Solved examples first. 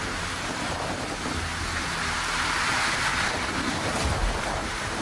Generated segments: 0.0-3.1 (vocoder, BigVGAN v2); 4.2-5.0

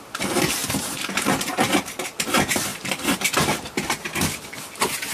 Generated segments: 2.7-5.1 (vocoder, BigVGAN v2)

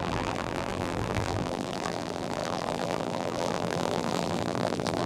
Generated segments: 0.0-5.1 (vocoder, BigVGAN v2)

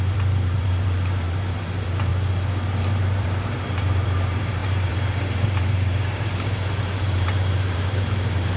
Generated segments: 0.0-2.1 (vocoder, BigVGAN v2); 2.7-8.6

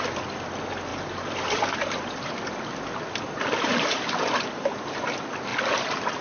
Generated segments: 0.9-4.5 (vocoder, BigVGAN v2)

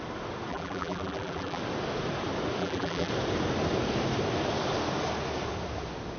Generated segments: 0.5-1.6 (vocoder, BigVGAN v2); 2.6-3.1

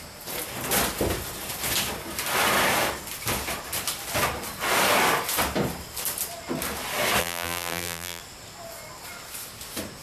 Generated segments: 7.2-8.2 (vocoder, BigVGAN v2)

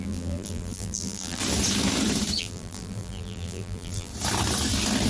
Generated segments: 0.0-1.4 (vocoder, BigVGAN v2); 2.4-4.1